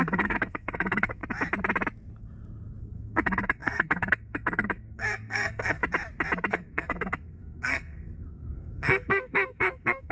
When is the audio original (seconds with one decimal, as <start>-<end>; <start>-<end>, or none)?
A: 1.2-2.8; 5.8-6.5